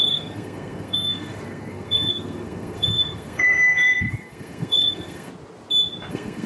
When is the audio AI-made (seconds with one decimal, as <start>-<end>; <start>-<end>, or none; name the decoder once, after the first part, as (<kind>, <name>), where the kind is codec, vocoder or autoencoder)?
0.0-5.3 (codec, SNAC); 6.1-6.5